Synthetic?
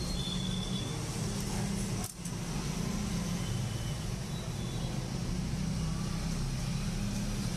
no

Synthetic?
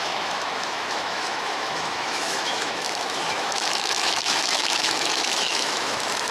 yes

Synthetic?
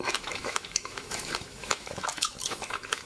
yes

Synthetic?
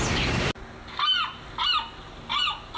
no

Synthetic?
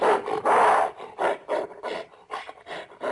no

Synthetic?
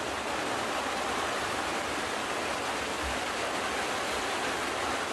no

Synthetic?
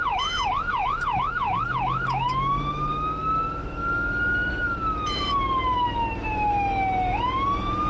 yes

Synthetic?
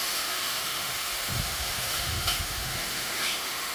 yes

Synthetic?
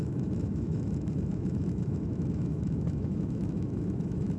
yes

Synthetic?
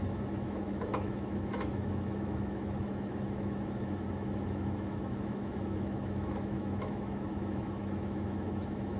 yes